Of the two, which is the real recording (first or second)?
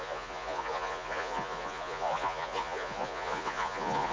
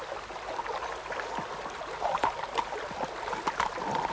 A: second